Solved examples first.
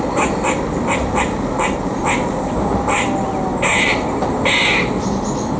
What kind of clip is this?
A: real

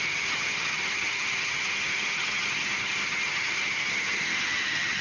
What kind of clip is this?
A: fake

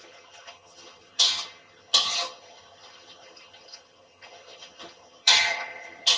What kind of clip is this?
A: fake